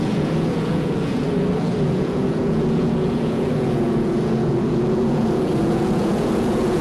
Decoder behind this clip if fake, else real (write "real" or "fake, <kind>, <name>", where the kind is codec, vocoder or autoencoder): fake, vocoder, Vocos